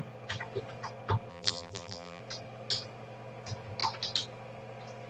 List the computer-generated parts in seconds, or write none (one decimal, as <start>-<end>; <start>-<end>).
1.3-2.2